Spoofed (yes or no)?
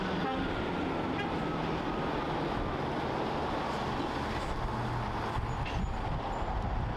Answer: no